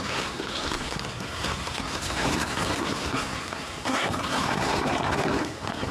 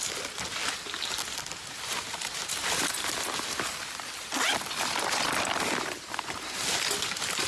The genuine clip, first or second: second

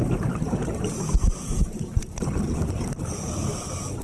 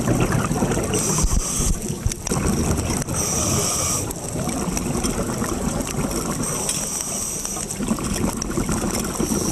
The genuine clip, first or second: second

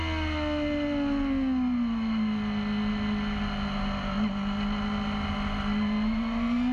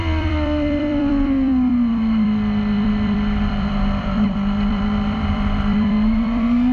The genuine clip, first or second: first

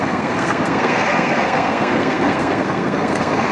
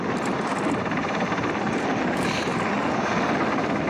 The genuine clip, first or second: second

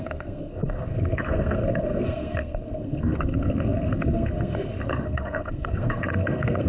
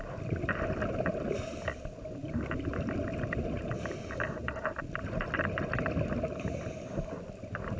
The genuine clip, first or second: second